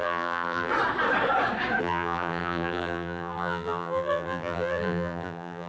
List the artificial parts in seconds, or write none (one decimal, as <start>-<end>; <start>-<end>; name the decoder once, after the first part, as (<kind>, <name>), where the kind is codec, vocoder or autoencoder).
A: 0.0-0.7 (vocoder, BigVGAN v2); 1.8-5.7